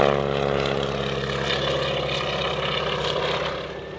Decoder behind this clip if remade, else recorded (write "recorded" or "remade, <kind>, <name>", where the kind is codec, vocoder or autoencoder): recorded